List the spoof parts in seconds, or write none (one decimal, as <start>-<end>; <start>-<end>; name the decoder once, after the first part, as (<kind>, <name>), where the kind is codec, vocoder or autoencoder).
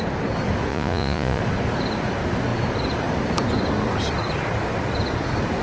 0.7-1.4 (vocoder, Vocos)